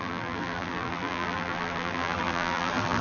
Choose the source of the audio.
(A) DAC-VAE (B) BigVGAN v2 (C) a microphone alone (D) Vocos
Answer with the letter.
B